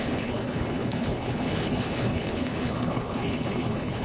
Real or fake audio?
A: fake